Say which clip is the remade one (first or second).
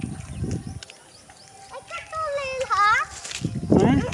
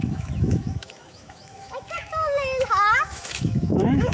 second